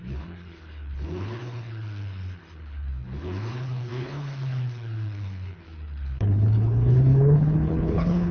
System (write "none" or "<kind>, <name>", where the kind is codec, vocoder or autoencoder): codec, HILCodec